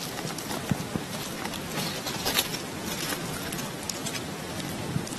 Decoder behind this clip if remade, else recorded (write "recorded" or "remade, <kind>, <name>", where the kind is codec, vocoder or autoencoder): recorded